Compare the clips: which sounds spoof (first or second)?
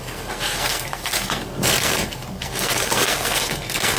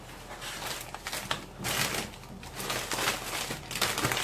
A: first